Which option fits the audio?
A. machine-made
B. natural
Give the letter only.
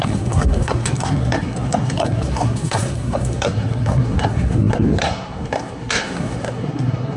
A